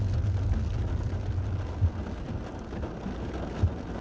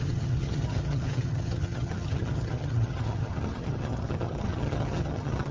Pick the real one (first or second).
first